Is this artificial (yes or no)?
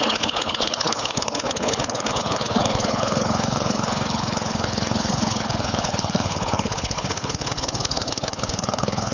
yes